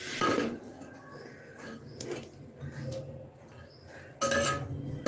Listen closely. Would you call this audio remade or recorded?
recorded